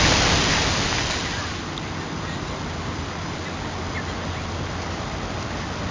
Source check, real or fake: real